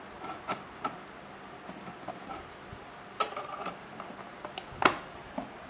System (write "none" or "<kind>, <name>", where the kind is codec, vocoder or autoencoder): none